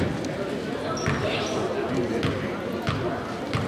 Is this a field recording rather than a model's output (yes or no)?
yes